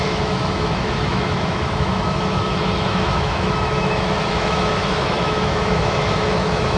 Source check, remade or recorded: remade